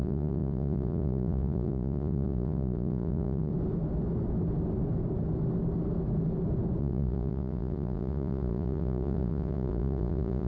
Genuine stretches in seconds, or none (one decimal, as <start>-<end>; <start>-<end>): 3.5-6.8